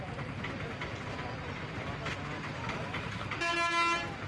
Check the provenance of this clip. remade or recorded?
recorded